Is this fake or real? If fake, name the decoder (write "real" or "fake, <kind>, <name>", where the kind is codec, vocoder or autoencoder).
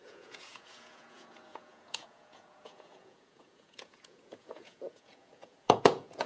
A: fake, vocoder, Vocos